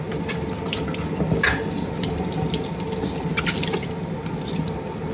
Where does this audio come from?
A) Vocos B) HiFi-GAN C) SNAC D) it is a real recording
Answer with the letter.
D